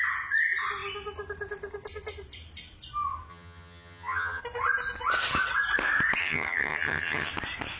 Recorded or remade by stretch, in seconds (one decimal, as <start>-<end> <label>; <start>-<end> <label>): 0.0-3.3 recorded; 3.3-4.4 remade; 4.4-6.2 recorded; 6.2-7.3 remade; 7.3-7.8 recorded